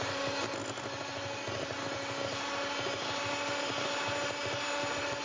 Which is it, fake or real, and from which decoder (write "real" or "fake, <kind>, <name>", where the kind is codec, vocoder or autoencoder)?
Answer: real